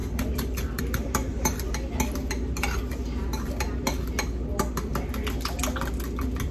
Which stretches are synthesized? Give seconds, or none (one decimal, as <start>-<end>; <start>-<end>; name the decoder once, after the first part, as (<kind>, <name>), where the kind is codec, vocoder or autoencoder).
0.0-0.8 (vocoder, BigVGAN v2)